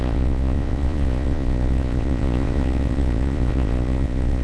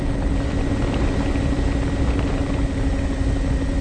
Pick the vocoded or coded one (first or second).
first